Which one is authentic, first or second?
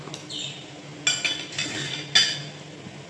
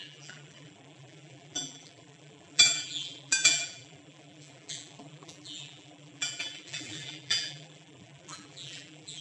first